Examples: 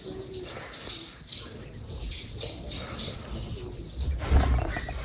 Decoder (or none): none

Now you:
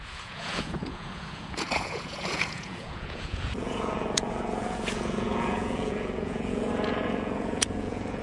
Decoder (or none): vocoder, Vocos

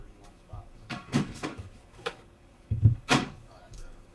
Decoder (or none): codec, DAC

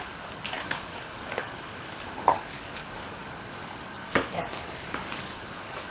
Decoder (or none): codec, DAC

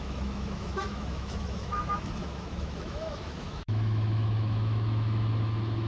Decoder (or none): autoencoder, DAC-VAE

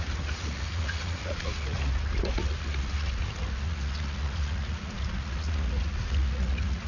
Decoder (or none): vocoder, Vocos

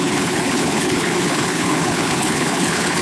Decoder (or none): codec, HILCodec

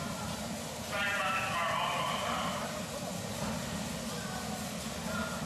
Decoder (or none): none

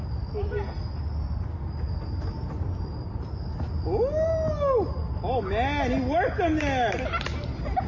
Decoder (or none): none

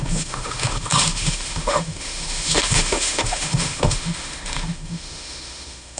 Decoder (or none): autoencoder, DAC-VAE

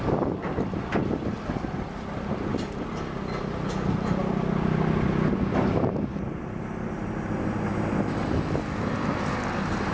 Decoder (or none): none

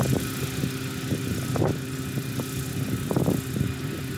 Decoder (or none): none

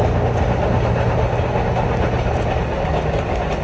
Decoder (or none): none